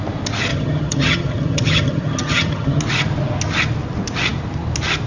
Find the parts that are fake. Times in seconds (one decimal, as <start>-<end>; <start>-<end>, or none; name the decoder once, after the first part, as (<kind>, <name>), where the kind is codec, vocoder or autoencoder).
0.5-2.8 (vocoder, HiFi-GAN)